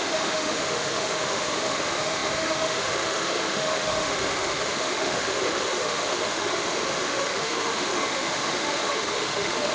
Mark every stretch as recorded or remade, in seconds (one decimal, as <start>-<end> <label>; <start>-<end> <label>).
0.0-9.7 remade